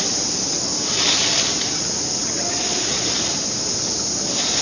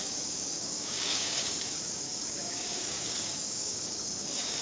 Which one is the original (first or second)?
first